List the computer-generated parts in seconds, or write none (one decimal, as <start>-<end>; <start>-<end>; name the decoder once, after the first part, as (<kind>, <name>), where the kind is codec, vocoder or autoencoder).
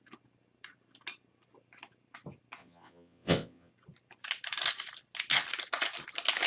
2.6-3.7 (vocoder, WaveNeXt)